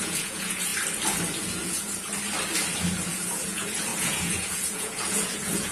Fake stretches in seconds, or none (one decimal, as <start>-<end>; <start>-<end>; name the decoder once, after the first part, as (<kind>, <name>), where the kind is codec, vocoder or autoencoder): 0.0-0.7 (vocoder, Vocos); 1.4-2.0; 3.1-5.7